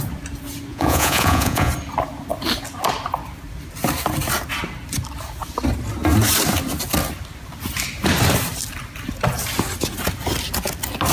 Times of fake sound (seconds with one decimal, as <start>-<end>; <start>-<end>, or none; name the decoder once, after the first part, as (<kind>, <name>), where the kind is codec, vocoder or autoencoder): 0.7-1.7 (vocoder, Vocos)